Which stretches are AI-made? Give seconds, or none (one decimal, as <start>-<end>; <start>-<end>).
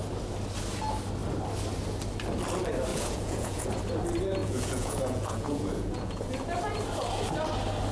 2.9-3.7; 4.4-6.2